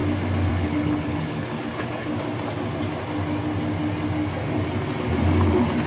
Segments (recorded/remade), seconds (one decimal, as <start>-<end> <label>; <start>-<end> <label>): 0.0-0.5 recorded; 0.5-2.1 remade; 2.1-5.9 recorded